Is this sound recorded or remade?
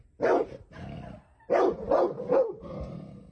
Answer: recorded